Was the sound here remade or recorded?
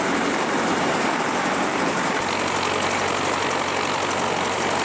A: recorded